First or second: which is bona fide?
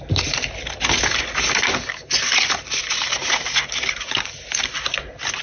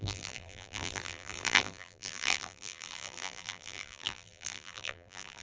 first